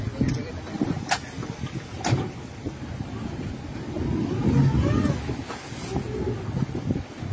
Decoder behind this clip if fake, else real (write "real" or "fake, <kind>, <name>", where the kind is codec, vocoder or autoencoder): real